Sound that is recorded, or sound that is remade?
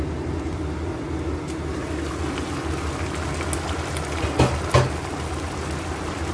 recorded